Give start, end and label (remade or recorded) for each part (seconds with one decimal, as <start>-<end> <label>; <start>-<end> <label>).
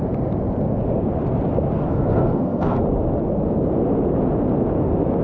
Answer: 0.0-1.8 recorded; 1.8-2.8 remade; 2.8-5.2 recorded